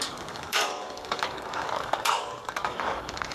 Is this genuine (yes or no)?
no